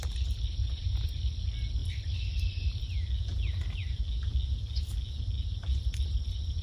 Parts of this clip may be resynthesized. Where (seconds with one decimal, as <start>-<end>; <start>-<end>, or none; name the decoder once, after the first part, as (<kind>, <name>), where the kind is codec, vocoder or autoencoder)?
0.6-1.1 (vocoder, Vocos)